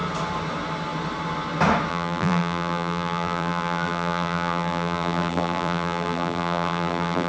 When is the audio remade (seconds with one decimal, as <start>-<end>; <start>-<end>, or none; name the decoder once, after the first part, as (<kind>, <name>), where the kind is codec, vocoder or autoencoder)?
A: 1.9-7.3 (vocoder, BigVGAN v2)